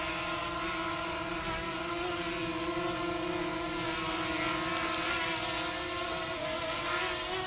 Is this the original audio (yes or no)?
yes